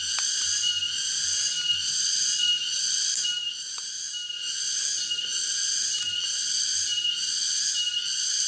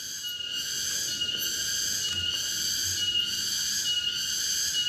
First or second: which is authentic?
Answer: second